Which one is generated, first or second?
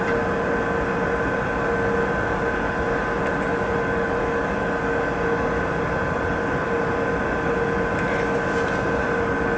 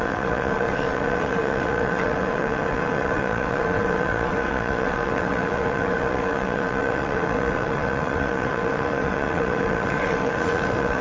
second